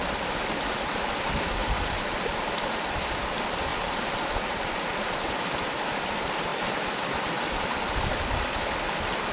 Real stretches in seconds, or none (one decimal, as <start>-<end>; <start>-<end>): 1.1-1.6; 3.2-3.7; 4.7-6.5; 8.0-9.3